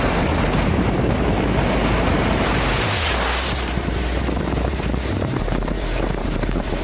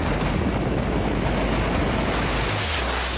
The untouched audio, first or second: second